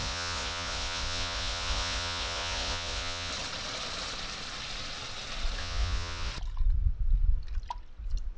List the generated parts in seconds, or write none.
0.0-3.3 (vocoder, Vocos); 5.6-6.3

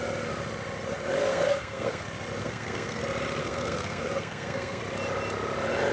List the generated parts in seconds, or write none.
1.3-2.0 (codec, SNAC); 2.4-3.0; 3.4-4.8

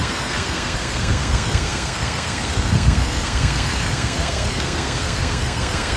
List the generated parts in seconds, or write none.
0.0-6.0 (codec, SNAC)

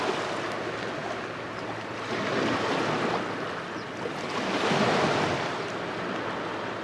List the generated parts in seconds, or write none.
none

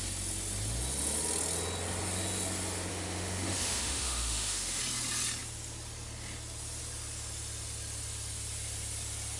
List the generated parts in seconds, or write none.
2.9-4.8 (autoencoder, DAC-VAE)

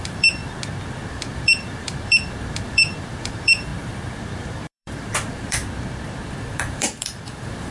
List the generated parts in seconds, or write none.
0.0-0.4 (vocoder, BigVGAN v2); 1.1-3.7; 4.2-5.6; 6.5-7.7

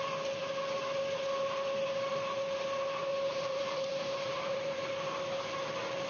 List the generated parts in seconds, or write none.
3.1-4.8 (vocoder, BigVGAN v2)